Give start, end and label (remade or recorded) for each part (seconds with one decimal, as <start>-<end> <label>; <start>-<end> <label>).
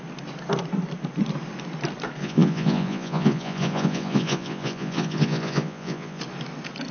0.0-2.2 recorded; 2.2-6.2 remade; 6.2-6.9 recorded